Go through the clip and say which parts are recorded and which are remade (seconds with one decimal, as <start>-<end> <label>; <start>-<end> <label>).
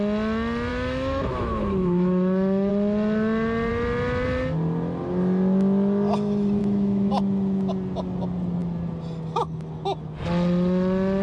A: 0.0-0.7 recorded; 0.7-2.7 remade; 2.7-6.6 recorded; 6.6-7.1 remade; 7.1-11.2 recorded